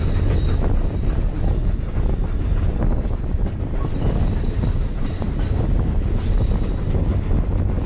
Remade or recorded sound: recorded